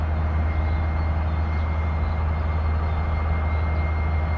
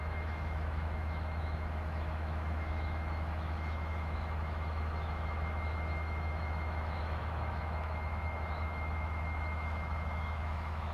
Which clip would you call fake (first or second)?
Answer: second